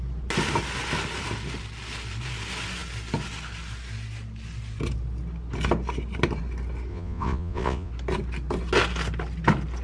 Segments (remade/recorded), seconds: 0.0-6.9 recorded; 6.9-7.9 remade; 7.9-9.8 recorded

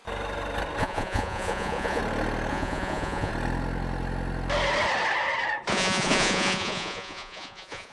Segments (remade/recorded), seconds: 0.0-0.8 recorded; 0.8-2.0 remade; 2.0-2.5 recorded; 2.5-3.3 remade; 3.3-5.7 recorded; 5.7-7.9 remade

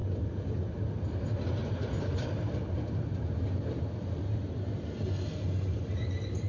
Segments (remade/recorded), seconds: 0.0-1.6 recorded; 1.6-4.4 remade; 4.4-6.5 recorded

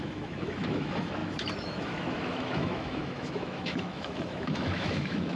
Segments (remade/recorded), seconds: 0.0-5.4 remade

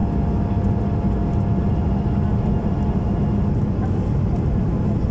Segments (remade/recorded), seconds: 0.0-5.1 recorded

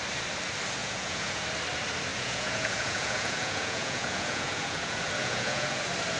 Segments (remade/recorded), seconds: 0.0-0.8 recorded; 0.8-1.4 remade; 1.4-2.1 recorded; 2.1-5.8 remade; 5.8-6.2 recorded

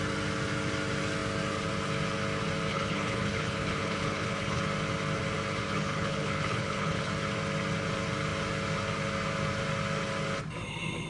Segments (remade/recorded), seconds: 0.0-2.7 recorded; 2.7-4.6 remade; 4.6-5.6 recorded; 5.6-7.1 remade; 7.1-11.1 recorded

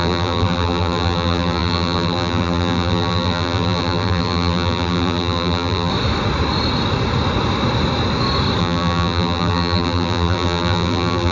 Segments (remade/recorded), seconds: 0.0-5.9 remade; 5.9-8.6 recorded; 8.6-11.3 remade